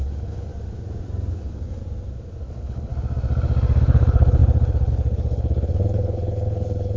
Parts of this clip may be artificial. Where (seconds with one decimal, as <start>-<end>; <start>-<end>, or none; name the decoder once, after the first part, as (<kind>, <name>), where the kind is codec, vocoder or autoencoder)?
0.0-0.5 (codec, HILCodec); 1.3-1.8; 2.5-2.9; 3.8-7.0

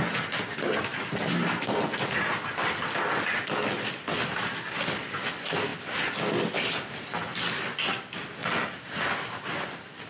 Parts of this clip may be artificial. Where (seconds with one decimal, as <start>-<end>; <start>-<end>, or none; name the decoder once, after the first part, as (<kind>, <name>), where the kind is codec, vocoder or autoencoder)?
none

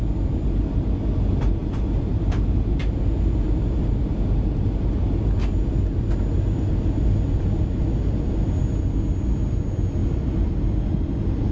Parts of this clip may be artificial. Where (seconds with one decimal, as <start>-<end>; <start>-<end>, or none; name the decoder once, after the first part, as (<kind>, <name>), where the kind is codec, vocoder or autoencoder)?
1.6-2.8 (vocoder, BigVGAN v2); 10.0-10.5

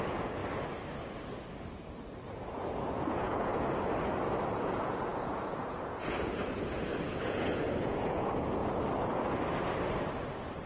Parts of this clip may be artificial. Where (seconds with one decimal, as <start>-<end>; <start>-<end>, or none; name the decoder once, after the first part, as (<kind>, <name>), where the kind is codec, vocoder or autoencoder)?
0.0-0.4 (vocoder, Vocos); 2.9-3.5; 4.6-8.6

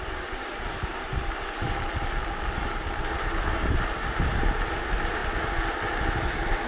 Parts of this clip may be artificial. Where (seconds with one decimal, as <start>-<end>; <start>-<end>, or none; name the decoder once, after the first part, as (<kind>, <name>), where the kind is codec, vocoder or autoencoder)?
0.0-2.2 (vocoder, BigVGAN v2); 3.0-5.2; 5.9-6.7

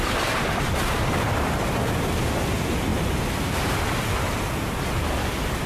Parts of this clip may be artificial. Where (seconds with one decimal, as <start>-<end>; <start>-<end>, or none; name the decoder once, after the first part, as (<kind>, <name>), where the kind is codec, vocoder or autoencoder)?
none

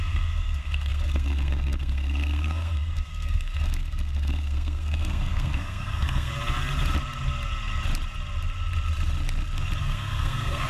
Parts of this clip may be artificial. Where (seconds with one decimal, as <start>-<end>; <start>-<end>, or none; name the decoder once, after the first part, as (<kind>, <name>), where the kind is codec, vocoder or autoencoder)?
0.0-6.3 (codec, SNAC); 9.8-10.7